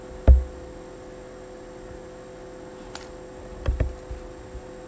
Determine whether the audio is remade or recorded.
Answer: recorded